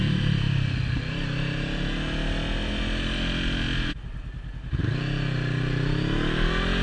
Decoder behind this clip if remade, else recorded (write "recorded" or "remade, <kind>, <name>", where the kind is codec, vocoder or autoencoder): recorded